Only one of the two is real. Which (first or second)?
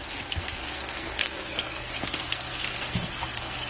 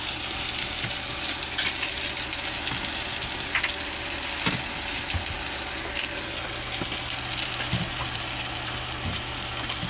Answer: second